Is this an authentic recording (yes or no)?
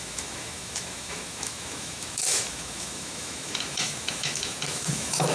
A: no